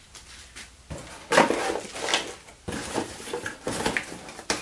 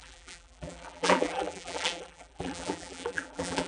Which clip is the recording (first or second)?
first